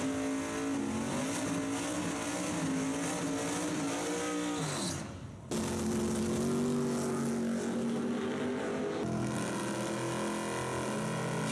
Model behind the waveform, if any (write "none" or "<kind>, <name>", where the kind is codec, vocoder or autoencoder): none